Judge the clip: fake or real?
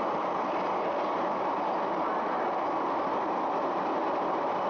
real